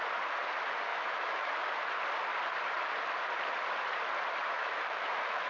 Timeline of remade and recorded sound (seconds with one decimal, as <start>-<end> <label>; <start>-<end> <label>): 0.0-0.9 recorded; 0.9-1.7 remade; 1.7-4.4 recorded; 4.4-5.5 remade